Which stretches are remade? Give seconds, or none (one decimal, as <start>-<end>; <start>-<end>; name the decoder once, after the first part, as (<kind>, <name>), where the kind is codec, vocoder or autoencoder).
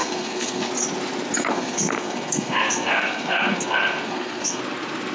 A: 0.0-0.7 (codec, SNAC); 1.5-4.6